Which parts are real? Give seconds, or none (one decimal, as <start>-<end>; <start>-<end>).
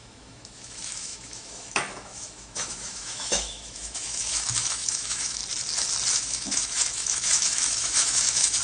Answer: 5.4-6.1